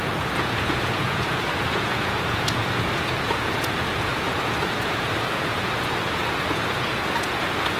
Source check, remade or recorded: remade